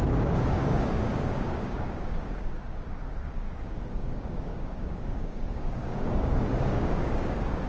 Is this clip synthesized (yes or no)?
yes